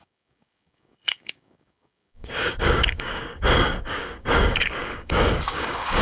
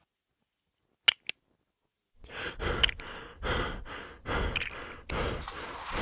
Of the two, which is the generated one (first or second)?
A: first